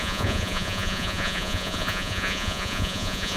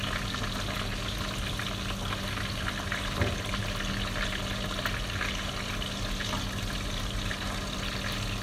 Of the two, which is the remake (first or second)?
first